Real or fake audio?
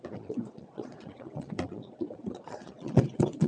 fake